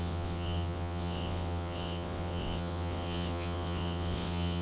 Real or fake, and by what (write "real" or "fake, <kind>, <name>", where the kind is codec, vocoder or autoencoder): fake, vocoder, WaveNeXt